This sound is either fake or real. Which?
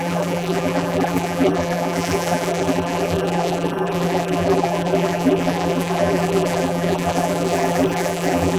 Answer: fake